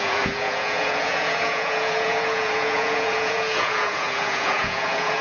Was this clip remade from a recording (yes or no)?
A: yes